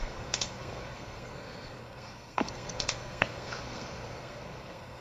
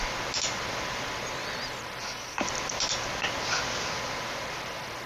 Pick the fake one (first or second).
first